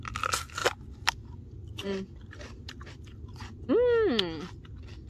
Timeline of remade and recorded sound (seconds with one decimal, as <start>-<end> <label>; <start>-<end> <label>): 0.0-0.6 recorded; 0.6-3.7 remade; 3.7-5.1 recorded